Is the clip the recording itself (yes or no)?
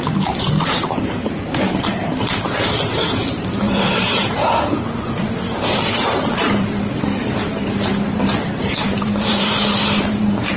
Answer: no